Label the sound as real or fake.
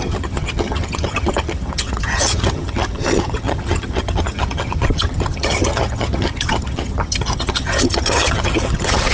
fake